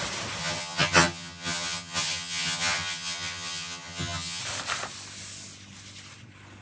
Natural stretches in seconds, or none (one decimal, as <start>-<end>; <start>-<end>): 0.0-0.4; 4.4-6.6